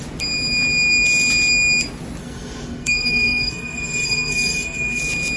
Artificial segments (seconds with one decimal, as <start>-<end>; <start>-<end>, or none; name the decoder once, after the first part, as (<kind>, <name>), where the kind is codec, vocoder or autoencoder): 2.2-5.0 (codec, SNAC)